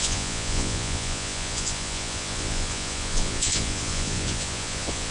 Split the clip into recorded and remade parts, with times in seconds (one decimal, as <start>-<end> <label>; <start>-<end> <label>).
0.0-5.1 remade